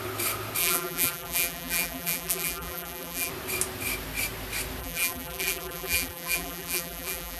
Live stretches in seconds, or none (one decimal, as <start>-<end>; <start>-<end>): 0.0-0.6; 3.3-4.8